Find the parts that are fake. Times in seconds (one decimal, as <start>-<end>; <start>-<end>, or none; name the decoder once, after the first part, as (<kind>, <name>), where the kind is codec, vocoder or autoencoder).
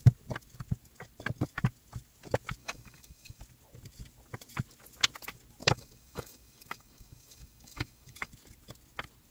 2.6-3.4 (codec, DAC); 5.6-8.3